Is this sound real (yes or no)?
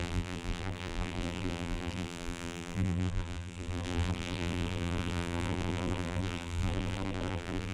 no